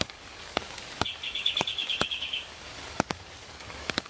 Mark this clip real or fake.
fake